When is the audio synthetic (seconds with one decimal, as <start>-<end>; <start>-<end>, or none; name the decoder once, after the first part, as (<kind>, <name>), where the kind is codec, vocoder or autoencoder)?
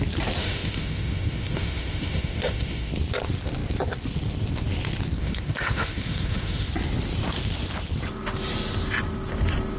0.4-2.9 (autoencoder, DAC-VAE); 5.2-6.7